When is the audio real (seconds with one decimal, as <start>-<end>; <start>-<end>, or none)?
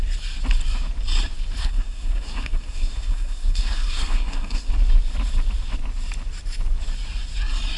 0.0-1.6; 4.7-7.8